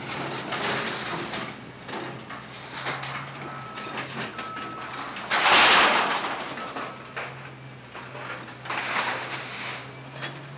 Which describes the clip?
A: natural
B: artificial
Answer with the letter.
A